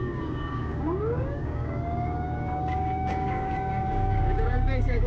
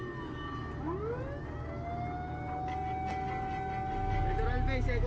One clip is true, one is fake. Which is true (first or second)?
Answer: second